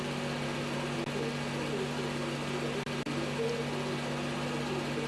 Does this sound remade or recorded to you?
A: recorded